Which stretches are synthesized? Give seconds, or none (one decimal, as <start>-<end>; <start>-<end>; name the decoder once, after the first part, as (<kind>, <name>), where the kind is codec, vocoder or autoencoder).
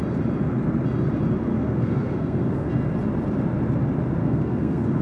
1.5-2.7 (codec, SNAC); 4.2-5.0